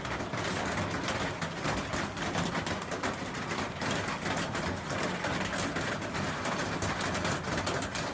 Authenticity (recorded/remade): recorded